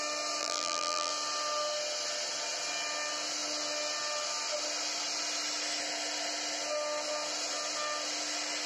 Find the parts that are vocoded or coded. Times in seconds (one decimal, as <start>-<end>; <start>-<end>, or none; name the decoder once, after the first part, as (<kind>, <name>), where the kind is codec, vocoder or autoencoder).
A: 0.4-1.1 (vocoder, BigVGAN v2)